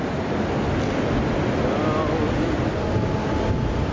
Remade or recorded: recorded